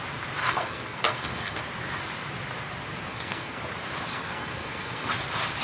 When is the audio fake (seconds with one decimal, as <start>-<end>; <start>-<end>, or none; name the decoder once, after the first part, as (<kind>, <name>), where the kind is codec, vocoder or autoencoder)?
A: 0.4-1.6 (codec, SNAC); 3.1-3.6; 4.1-5.1